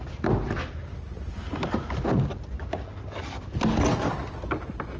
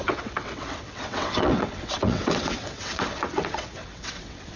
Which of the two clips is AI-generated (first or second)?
second